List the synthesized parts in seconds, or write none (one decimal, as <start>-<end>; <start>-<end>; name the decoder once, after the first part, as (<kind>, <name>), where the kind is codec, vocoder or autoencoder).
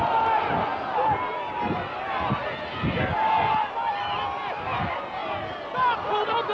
none